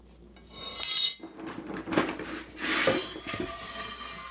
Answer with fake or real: real